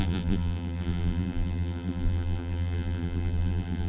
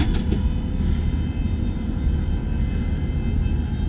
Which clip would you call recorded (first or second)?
second